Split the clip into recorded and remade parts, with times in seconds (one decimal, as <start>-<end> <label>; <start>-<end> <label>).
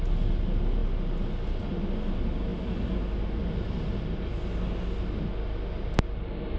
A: 0.0-6.6 recorded